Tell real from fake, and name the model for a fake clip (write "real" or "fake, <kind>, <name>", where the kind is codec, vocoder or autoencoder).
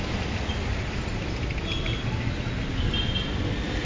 real